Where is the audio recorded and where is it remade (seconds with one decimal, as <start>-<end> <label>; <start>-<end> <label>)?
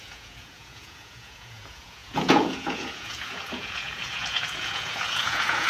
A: 0.0-5.7 remade